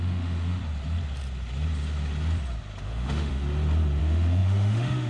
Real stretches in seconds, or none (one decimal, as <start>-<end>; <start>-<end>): 0.6-2.8; 3.3-4.0